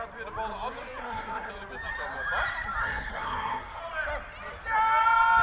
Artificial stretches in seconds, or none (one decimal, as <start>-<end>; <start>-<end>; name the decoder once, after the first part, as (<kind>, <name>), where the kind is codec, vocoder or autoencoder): 1.0-1.5 (codec, SNAC); 2.8-3.8